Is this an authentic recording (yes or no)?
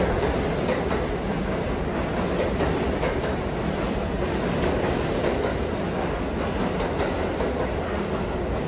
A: yes